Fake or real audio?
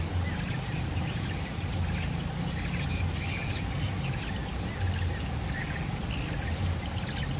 real